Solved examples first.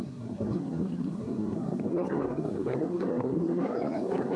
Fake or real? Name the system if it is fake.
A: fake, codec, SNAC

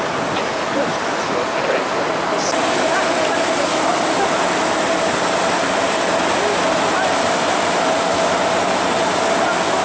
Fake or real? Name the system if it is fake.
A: real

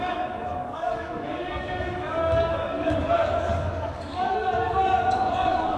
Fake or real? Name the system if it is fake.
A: fake, codec, DAC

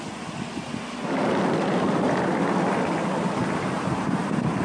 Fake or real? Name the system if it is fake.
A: real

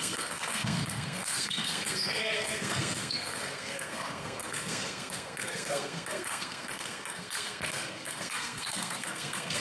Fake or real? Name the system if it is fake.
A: fake, codec, SNAC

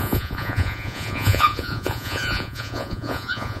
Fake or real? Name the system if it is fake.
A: fake, vocoder, Vocos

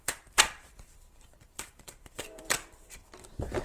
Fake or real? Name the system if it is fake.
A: fake, vocoder, BigVGAN v2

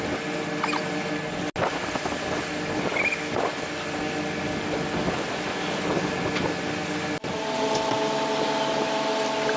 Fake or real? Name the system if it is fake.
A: real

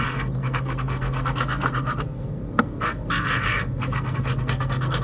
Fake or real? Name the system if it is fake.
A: fake, codec, SNAC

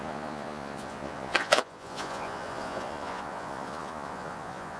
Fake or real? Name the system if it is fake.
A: fake, vocoder, Vocos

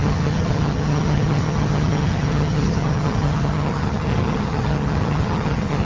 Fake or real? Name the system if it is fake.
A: fake, vocoder, HiFi-GAN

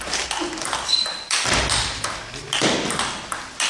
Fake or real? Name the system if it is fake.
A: real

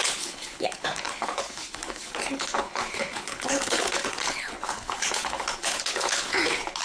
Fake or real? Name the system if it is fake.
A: fake, codec, HILCodec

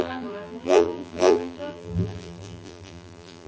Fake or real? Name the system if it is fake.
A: fake, vocoder, BigVGAN v2